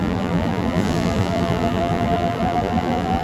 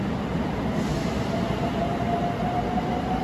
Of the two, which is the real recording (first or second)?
second